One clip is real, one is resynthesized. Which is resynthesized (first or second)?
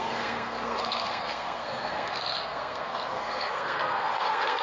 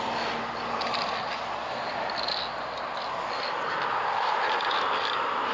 first